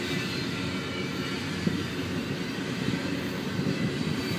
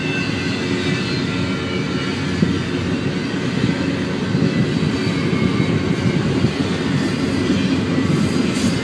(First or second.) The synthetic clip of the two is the first